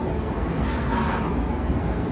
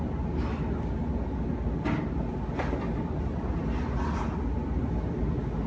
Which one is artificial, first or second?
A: first